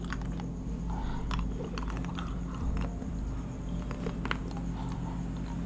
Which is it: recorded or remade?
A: recorded